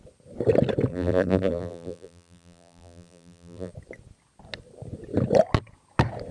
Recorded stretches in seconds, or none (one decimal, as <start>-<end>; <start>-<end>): 0.0-0.9; 3.7-6.3